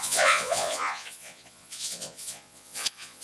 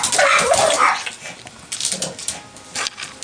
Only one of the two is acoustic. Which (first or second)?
second